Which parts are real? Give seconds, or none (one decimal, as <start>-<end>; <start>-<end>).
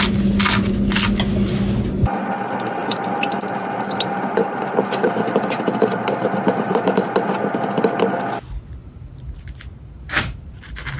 0.0-2.8; 7.1-8.8